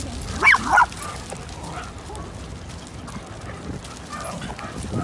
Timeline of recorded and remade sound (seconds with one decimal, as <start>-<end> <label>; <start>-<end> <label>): 0.0-5.0 recorded